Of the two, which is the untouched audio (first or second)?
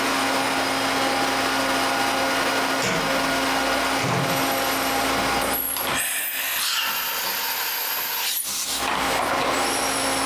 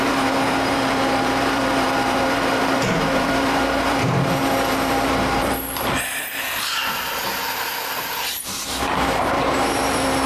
first